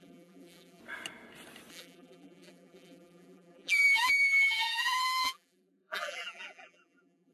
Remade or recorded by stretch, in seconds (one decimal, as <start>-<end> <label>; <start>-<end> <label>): 0.0-0.8 remade; 0.8-1.7 recorded; 1.7-7.3 remade